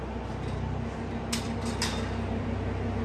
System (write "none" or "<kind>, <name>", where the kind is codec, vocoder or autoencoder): none